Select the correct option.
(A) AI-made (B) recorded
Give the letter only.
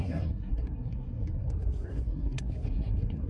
A